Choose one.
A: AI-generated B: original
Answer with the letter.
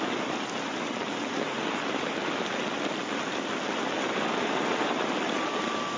B